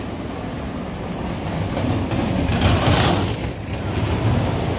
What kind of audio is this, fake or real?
real